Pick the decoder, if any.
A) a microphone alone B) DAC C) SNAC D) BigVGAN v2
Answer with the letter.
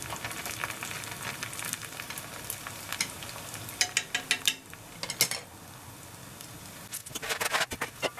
A